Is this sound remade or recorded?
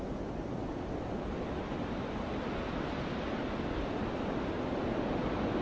recorded